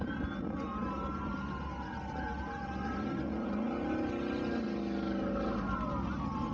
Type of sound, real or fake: real